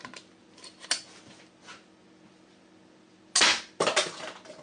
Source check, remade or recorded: recorded